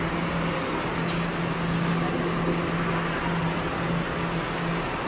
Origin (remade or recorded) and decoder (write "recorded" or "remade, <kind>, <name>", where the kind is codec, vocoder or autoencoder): recorded